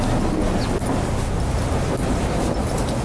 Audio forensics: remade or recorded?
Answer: recorded